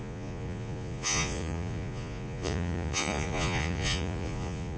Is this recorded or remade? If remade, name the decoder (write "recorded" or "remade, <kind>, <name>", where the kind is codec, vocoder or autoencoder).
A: remade, vocoder, Vocos